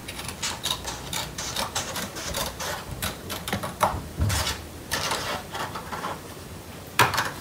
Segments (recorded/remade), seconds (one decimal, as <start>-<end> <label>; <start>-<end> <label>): 0.0-1.7 recorded; 1.7-7.4 remade